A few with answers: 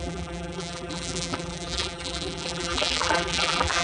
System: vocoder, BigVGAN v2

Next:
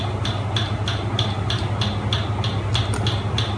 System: none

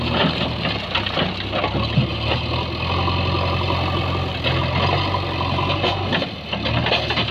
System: none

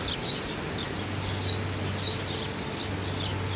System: none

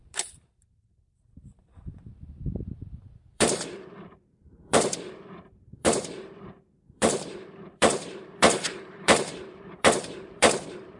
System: vocoder, BigVGAN v2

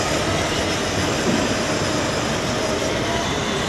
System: none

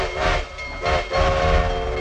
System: none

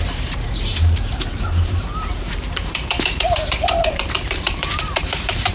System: vocoder, BigVGAN v2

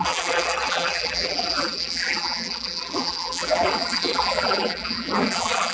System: vocoder, BigVGAN v2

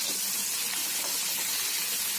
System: vocoder, BigVGAN v2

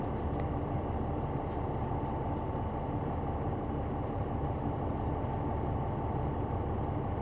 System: none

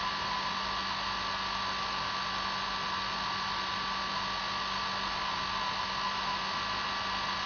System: none